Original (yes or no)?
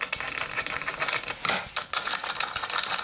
yes